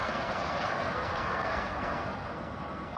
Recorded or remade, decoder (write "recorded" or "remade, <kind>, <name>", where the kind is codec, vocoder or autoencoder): remade, codec, SNAC